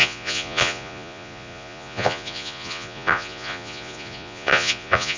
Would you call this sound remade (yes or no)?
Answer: yes